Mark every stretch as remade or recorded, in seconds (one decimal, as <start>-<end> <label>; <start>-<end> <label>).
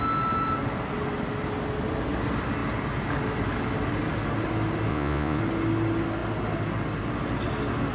0.0-4.9 recorded; 4.9-5.4 remade; 5.4-7.9 recorded